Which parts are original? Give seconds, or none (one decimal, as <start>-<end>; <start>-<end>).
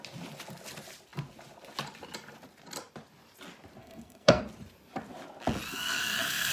0.0-3.8; 4.4-5.7